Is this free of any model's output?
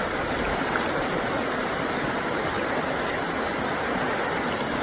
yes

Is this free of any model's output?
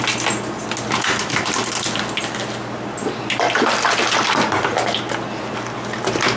yes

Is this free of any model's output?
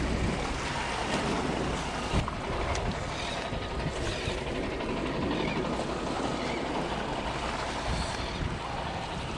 yes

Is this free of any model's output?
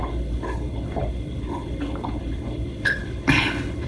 no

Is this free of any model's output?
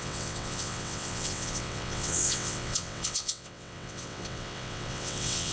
no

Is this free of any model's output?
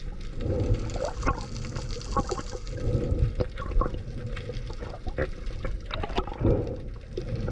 yes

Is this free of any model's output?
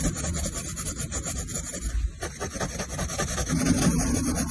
yes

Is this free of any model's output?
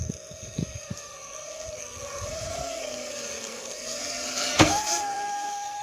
no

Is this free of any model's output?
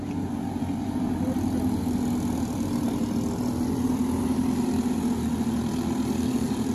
yes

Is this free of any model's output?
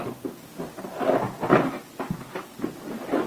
yes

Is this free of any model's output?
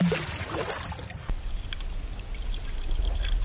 yes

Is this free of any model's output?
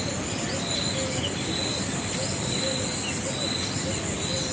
yes